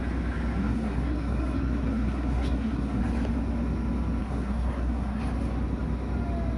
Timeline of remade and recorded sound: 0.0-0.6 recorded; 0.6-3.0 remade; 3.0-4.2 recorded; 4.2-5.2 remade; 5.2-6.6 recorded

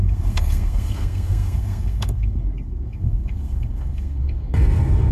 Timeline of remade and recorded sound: 0.0-5.1 remade

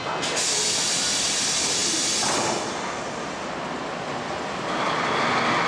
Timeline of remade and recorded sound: 0.0-5.7 recorded

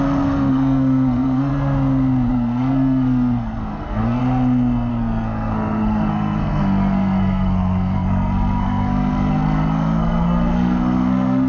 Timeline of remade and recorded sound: 0.0-1.5 remade; 1.5-2.3 recorded; 2.3-4.2 remade; 4.2-4.9 recorded; 4.9-11.5 remade

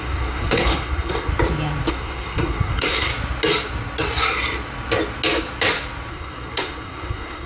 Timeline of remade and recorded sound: 0.0-1.3 remade; 1.3-1.9 recorded; 1.9-3.1 remade; 3.1-6.1 recorded; 6.1-7.5 remade

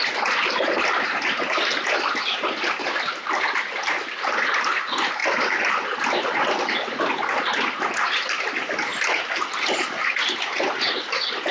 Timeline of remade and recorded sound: 0.0-11.5 recorded

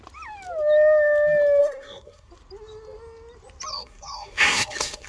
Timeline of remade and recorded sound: 0.0-1.6 recorded; 1.6-2.3 remade; 2.3-3.7 recorded; 3.7-5.1 remade